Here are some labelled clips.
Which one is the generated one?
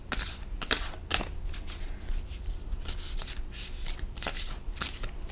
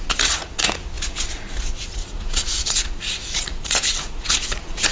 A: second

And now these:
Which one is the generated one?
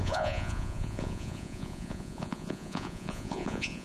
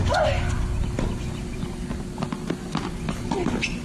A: first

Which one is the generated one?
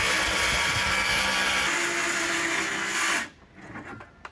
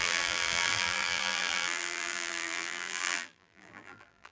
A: second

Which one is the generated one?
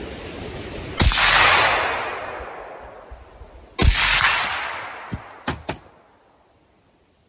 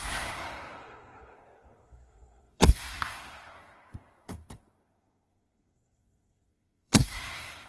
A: second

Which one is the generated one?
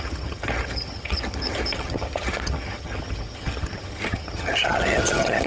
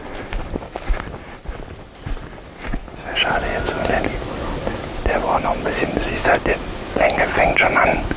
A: first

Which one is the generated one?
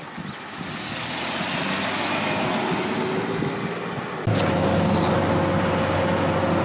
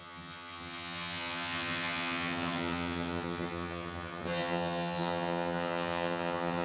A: second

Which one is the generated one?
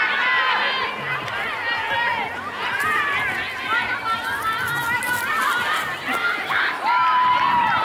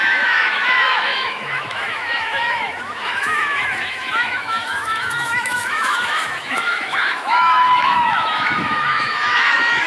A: second